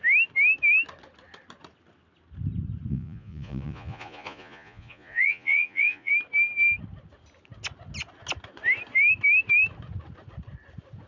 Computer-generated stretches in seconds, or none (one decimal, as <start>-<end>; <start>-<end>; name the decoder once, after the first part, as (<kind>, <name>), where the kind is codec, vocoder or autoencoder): 2.9-6.1 (vocoder, Vocos)